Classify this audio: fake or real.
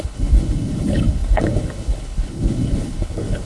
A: fake